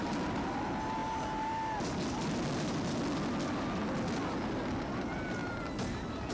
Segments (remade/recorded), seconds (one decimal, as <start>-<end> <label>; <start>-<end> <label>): 0.0-5.4 recorded; 5.4-6.3 remade